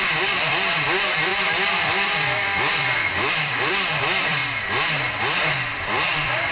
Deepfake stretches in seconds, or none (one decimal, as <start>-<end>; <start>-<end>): 0.0-4.4; 5.2-6.5